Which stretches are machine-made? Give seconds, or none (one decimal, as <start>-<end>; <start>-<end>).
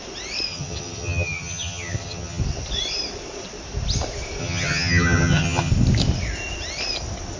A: 0.5-2.4; 4.4-5.7